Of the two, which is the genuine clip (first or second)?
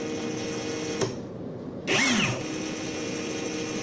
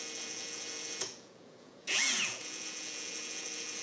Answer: first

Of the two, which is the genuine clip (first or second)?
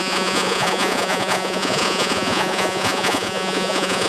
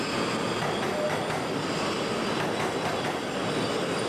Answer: second